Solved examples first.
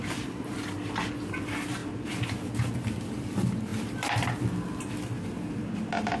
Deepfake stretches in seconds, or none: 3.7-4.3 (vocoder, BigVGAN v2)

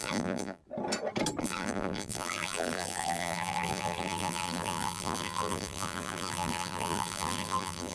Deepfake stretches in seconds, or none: 0.0-0.6 (vocoder, BigVGAN v2); 1.4-7.9